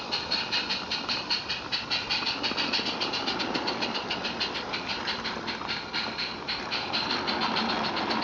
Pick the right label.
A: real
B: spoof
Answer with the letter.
A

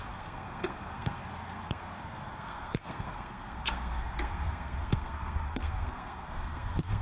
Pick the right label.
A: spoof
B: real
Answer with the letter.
A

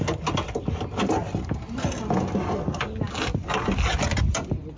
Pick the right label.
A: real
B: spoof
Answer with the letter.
A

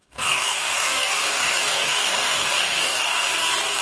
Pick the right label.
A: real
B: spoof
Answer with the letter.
B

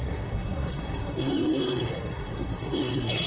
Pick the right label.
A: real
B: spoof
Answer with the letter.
B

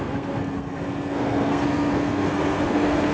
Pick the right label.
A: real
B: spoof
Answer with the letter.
B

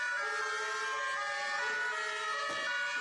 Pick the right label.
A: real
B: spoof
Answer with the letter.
A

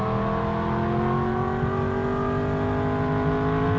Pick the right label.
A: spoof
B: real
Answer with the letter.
B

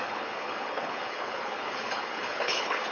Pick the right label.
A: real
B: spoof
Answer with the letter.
B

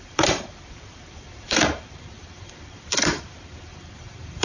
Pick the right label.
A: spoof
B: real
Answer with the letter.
A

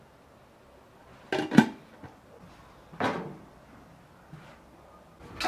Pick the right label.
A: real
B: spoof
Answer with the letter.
A